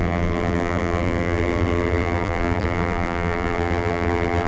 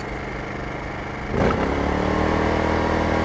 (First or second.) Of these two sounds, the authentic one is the second